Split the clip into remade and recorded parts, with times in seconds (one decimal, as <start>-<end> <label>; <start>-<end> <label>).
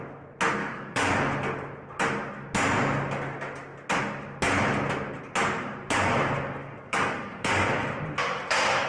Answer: 0.0-0.6 recorded; 0.6-1.2 remade; 1.2-6.6 recorded; 6.6-7.7 remade; 7.7-8.9 recorded